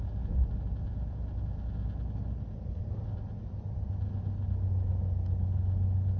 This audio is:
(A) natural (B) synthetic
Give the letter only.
A